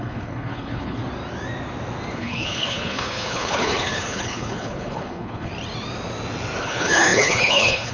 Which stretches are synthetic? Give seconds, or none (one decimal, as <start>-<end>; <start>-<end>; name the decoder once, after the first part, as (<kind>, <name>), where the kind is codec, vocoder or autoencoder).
0.0-1.0 (codec, HILCodec); 2.1-5.5; 6.6-7.9